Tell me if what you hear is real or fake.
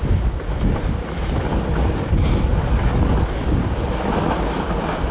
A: real